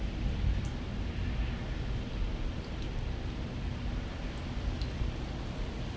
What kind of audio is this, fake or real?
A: real